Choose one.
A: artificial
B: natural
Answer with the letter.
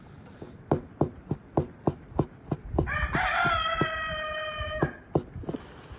B